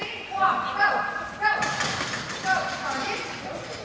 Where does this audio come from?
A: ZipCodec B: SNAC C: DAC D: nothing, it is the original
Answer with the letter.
D